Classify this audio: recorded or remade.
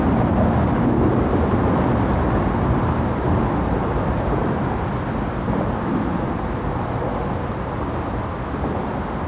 recorded